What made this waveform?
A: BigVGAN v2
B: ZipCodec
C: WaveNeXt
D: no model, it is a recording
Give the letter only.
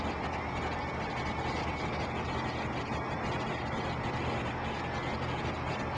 D